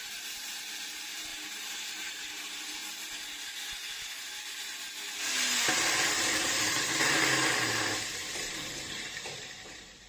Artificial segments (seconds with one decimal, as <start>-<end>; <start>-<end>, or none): 0.0-2.8; 6.1-10.1